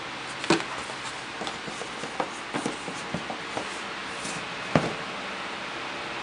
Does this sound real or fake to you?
real